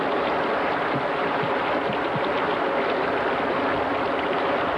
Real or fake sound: real